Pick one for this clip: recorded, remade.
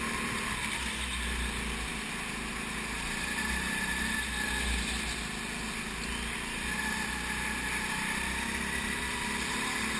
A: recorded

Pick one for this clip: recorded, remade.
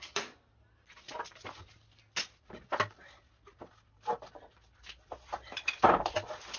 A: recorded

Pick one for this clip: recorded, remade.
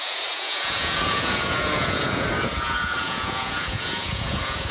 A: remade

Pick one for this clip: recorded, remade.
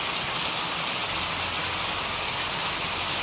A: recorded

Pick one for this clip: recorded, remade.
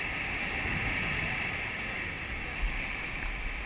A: recorded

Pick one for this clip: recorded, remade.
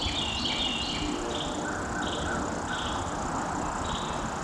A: recorded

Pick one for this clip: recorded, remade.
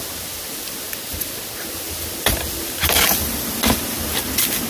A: recorded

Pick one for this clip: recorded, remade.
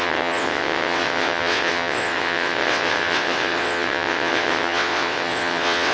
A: remade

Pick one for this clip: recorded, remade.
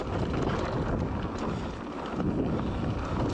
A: recorded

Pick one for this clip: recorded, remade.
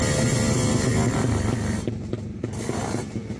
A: recorded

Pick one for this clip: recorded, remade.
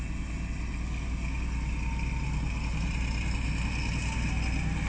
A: recorded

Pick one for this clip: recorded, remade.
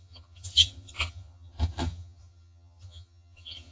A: remade